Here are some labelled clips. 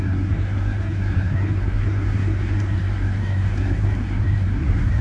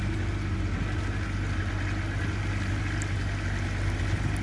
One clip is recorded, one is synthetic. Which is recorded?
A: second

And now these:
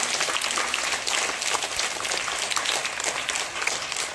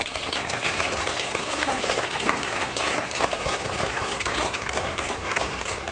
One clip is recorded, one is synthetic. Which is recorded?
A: first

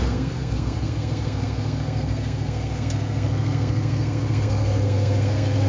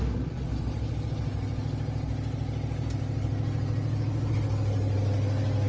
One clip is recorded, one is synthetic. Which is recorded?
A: second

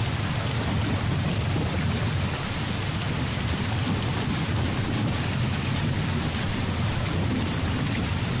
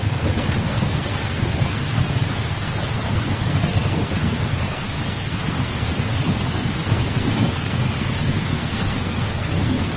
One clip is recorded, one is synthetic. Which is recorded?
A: first